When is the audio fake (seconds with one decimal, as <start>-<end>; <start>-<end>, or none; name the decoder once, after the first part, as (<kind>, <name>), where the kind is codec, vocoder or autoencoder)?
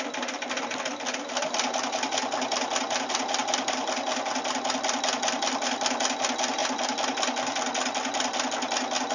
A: none